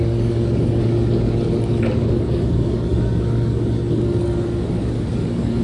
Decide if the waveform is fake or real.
fake